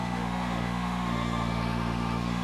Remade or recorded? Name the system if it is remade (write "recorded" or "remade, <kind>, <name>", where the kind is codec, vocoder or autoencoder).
remade, autoencoder, DAC-VAE